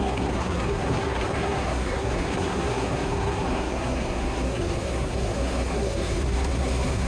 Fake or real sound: fake